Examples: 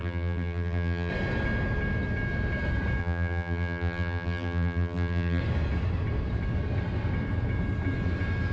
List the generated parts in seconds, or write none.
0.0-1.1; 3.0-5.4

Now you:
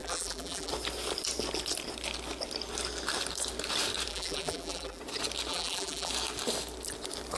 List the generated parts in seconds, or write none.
0.0-0.7; 4.1-5.0; 5.5-6.1